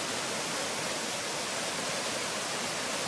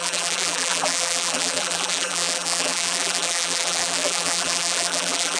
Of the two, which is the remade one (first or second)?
second